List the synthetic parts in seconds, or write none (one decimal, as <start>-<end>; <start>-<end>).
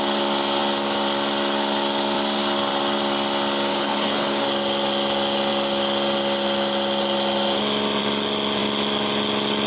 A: 3.7-4.4